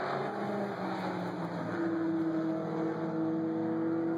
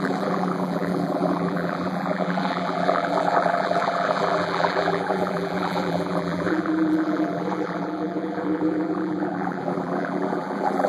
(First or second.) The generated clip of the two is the second